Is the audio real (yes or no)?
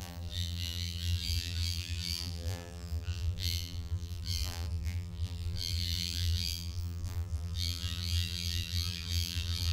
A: no